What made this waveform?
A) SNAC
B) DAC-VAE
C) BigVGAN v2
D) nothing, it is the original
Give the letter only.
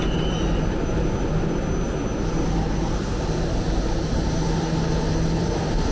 D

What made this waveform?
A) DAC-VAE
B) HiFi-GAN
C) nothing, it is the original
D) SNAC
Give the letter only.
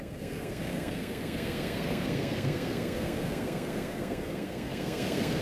D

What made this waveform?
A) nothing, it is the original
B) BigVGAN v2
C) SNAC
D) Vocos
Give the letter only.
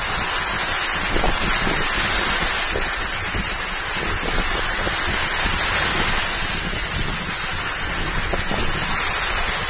A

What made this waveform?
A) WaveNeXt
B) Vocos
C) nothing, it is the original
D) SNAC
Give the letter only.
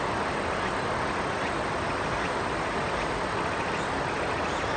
C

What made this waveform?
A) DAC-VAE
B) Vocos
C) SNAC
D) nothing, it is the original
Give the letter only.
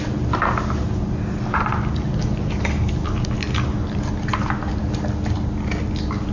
D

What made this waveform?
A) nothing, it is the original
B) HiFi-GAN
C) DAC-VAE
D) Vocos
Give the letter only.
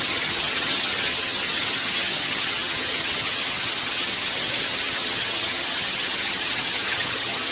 B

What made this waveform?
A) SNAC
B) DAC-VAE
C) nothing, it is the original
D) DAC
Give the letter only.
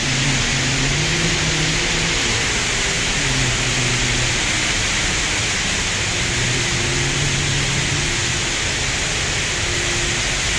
C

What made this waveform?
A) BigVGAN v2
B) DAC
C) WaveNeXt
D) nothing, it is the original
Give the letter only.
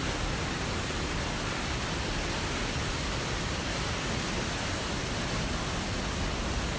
D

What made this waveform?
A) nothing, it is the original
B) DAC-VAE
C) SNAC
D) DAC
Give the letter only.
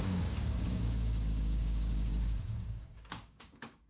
D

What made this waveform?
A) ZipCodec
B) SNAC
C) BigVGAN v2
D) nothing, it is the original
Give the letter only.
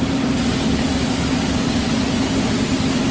D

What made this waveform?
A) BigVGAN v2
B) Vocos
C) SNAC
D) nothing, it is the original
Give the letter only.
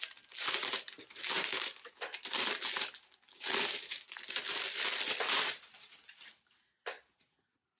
D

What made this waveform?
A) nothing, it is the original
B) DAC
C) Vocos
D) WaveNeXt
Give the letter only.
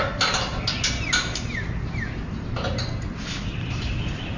A